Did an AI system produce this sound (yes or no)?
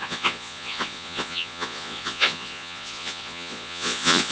yes